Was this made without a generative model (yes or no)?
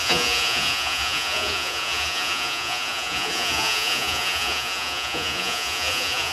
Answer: no